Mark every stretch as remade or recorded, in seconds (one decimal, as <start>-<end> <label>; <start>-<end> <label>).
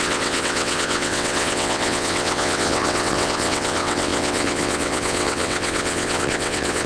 0.0-6.9 remade